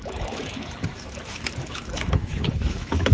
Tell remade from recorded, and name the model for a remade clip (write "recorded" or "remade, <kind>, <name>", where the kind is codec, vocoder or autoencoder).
remade, autoencoder, DAC-VAE